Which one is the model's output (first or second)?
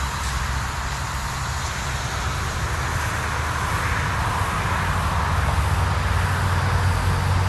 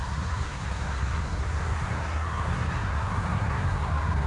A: second